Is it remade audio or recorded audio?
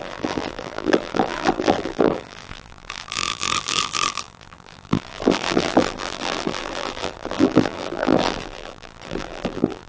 remade